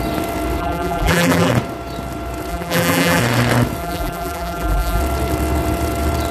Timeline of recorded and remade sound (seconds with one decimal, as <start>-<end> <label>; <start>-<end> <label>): 0.0-0.6 recorded; 0.6-1.5 remade; 1.5-2.5 recorded; 2.5-3.2 remade; 3.2-3.8 recorded; 3.8-5.0 remade; 5.0-6.3 recorded